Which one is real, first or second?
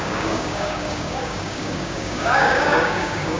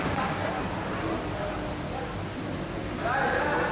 second